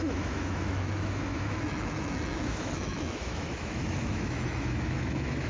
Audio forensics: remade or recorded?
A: remade